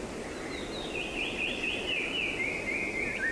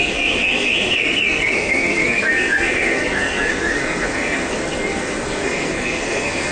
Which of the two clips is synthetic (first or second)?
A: second